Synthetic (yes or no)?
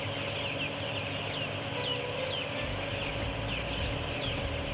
no